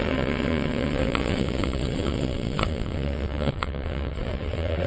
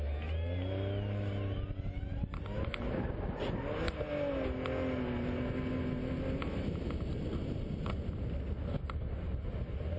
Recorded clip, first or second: second